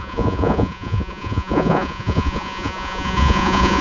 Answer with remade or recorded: remade